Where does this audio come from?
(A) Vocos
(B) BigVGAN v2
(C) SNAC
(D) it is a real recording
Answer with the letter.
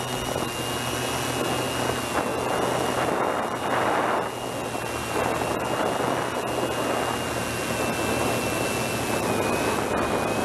D